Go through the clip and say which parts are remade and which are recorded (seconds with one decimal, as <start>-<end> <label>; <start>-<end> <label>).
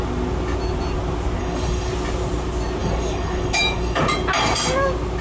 0.0-1.4 recorded; 1.4-1.9 remade; 1.9-2.8 recorded; 2.8-4.0 remade; 4.0-5.2 recorded